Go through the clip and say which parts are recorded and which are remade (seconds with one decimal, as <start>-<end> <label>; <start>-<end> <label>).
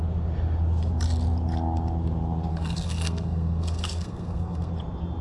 0.0-2.5 recorded; 2.5-4.7 remade; 4.7-5.2 recorded